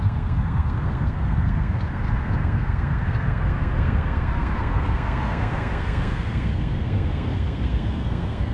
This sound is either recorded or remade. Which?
remade